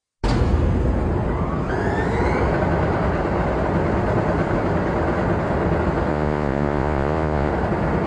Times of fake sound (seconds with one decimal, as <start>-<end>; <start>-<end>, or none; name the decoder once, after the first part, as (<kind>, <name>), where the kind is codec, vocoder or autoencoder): 6.1-7.5 (vocoder, Vocos)

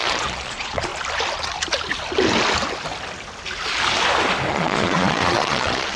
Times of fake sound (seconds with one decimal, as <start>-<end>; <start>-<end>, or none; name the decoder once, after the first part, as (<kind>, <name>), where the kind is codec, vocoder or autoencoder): 0.0-0.9 (vocoder, Vocos); 4.5-6.0

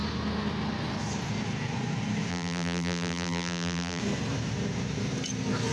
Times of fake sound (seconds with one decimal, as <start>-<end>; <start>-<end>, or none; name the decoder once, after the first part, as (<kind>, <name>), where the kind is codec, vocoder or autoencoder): 2.3-4.0 (vocoder, BigVGAN v2)

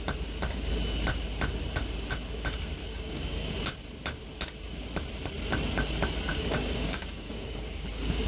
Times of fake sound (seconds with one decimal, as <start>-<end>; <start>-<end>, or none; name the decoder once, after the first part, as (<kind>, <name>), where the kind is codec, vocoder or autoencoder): 2.8-3.5 (codec, DAC); 6.3-8.3

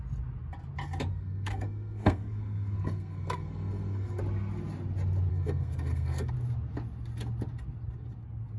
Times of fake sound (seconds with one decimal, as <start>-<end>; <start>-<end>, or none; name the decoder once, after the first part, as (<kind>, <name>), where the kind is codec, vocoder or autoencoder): 1.1-4.2 (codec, SNAC); 5.3-6.3

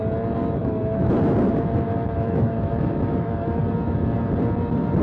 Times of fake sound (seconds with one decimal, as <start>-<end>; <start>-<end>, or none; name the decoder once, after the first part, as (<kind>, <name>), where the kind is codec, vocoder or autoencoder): 0.6-3.6 (autoencoder, DAC-VAE)

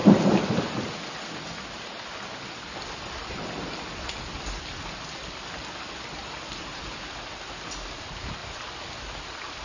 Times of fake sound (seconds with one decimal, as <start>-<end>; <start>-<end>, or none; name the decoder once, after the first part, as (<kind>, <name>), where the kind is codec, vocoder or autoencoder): none

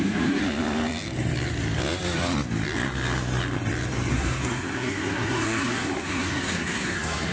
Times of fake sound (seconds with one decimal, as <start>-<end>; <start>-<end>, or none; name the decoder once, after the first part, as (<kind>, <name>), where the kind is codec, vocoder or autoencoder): 0.0-0.4 (codec, SNAC); 4.1-7.3